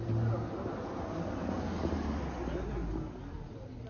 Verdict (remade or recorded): recorded